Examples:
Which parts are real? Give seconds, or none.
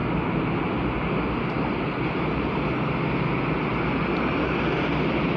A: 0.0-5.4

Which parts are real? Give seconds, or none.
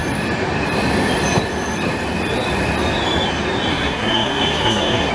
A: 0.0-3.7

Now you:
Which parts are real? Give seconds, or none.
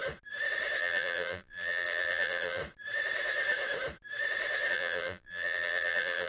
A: 0.0-0.8; 2.6-4.7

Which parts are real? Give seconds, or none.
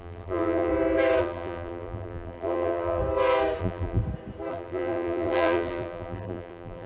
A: 0.7-1.2; 3.0-3.6; 4.0-4.5